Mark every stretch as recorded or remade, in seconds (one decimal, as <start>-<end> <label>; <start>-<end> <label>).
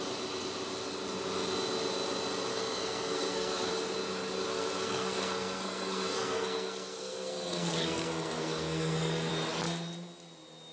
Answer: 0.0-2.5 recorded; 2.5-3.7 remade; 3.7-4.5 recorded; 4.5-9.3 remade; 9.3-10.7 recorded